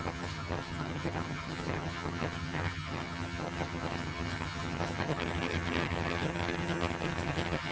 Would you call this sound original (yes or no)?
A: no